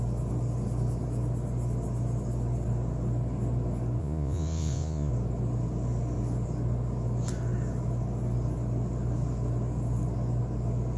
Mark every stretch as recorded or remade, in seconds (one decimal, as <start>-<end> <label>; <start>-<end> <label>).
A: 0.0-4.0 recorded; 4.0-5.1 remade; 5.1-11.0 recorded